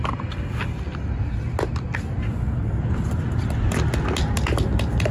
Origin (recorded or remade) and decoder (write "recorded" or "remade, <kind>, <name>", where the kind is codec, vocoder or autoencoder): recorded